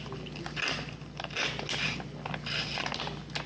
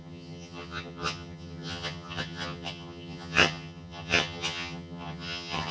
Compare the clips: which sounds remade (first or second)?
second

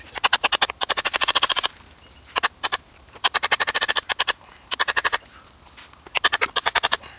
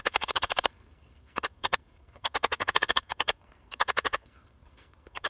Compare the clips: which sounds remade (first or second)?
second